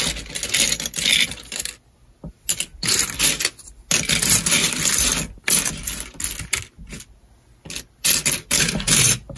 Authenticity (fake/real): real